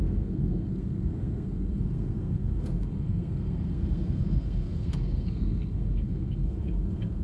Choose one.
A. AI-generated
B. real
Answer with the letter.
A